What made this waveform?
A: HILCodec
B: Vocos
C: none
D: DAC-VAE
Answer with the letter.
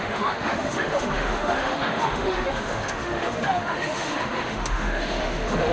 D